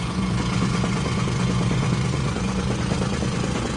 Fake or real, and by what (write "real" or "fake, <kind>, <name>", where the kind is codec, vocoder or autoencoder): fake, vocoder, Vocos